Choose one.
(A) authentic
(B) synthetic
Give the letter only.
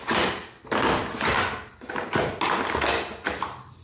A